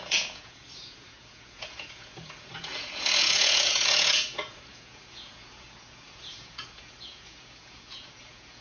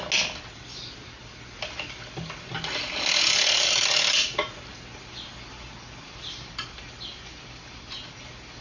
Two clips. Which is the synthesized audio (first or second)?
first